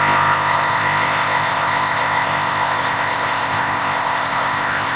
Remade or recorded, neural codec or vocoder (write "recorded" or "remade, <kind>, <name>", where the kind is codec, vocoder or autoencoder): remade, codec, ZipCodec